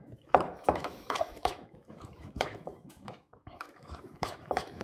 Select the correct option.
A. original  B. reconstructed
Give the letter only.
B